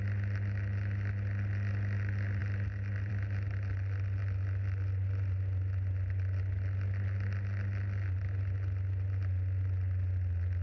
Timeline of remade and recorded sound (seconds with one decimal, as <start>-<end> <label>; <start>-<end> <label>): 0.0-10.6 recorded